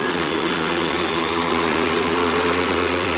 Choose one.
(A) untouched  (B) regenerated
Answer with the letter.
B